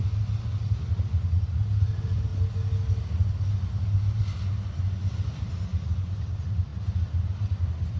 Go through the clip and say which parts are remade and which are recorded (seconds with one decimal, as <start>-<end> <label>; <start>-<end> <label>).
0.0-8.0 recorded